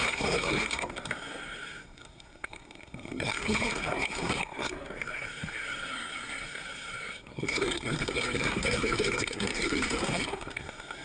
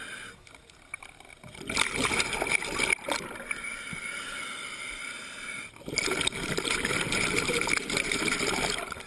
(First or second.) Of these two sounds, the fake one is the first